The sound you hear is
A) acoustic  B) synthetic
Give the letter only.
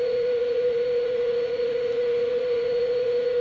B